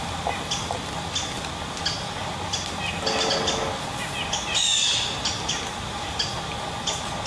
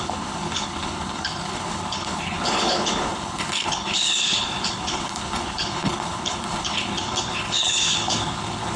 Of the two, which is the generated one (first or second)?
second